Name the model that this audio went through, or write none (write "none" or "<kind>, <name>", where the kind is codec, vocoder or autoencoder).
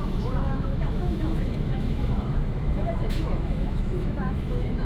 autoencoder, DAC-VAE